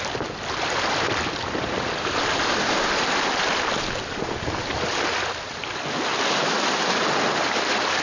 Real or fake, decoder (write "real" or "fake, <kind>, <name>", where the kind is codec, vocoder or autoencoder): real